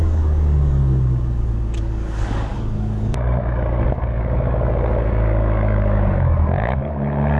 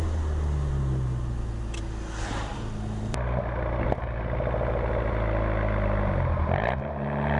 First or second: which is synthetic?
first